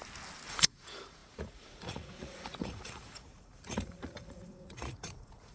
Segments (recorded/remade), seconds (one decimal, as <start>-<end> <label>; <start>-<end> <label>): 0.0-0.5 recorded; 0.5-5.5 remade